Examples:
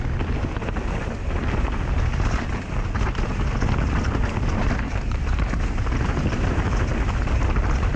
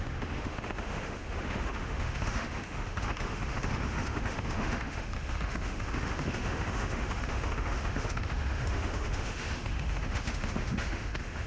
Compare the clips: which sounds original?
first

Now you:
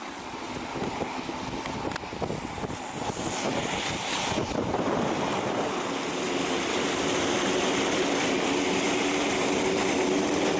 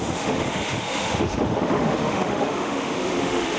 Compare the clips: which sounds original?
first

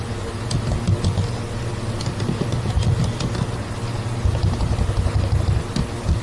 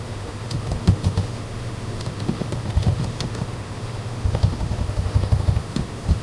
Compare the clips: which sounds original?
first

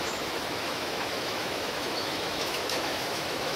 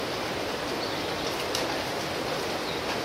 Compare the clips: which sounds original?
second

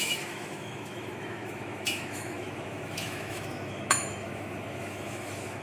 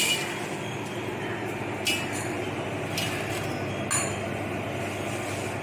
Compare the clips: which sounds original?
second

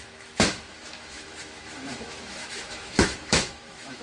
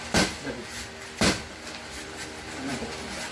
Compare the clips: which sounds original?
second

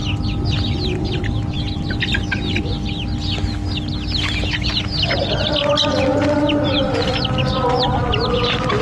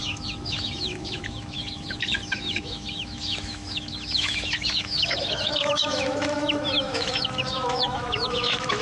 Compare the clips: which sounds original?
first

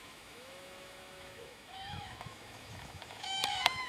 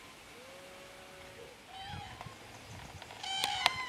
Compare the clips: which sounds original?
second